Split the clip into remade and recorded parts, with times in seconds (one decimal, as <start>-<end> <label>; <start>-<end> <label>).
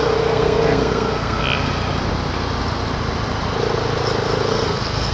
0.0-1.4 remade; 1.4-4.5 recorded; 4.5-5.1 remade